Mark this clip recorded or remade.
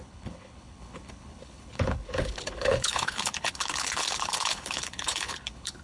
remade